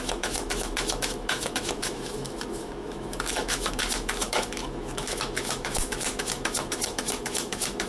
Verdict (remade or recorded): remade